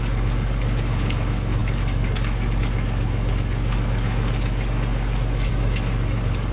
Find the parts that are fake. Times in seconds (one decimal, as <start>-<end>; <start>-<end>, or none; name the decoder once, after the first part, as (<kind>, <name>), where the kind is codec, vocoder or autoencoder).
0.0-6.5 (codec, DAC)